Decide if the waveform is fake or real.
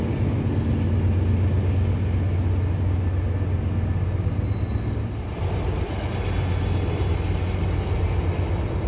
real